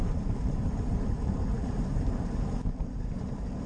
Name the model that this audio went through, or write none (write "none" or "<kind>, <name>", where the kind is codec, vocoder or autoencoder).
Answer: vocoder, BigVGAN v2